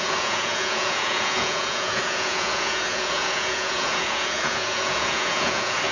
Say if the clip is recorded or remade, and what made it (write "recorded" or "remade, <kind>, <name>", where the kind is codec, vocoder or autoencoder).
remade, vocoder, Vocos